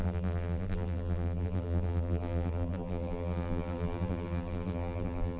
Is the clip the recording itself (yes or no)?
no